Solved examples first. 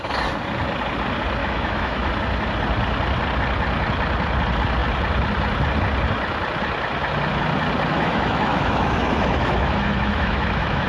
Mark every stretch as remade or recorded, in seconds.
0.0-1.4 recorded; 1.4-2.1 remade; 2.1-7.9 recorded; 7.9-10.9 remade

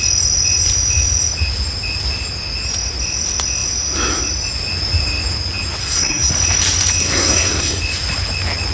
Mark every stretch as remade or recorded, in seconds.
0.0-5.8 recorded; 5.8-6.3 remade; 6.3-7.0 recorded; 7.0-7.8 remade; 7.8-8.7 recorded

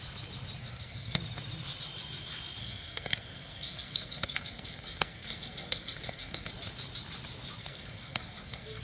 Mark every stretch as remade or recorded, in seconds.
0.0-0.6 recorded; 0.6-1.2 remade; 1.2-2.6 recorded; 2.6-6.5 remade; 6.5-7.6 recorded; 7.6-8.8 remade

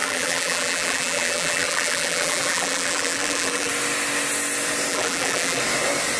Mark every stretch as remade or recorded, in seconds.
0.0-3.7 remade; 3.7-4.9 recorded; 4.9-5.6 remade; 5.6-6.2 recorded

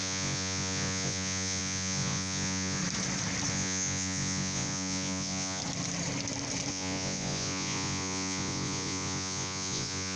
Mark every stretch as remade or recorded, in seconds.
0.0-2.8 remade; 2.8-3.5 recorded; 3.5-5.6 remade; 5.6-6.7 recorded; 6.7-10.2 remade